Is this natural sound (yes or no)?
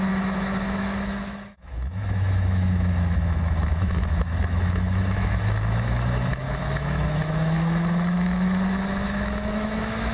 no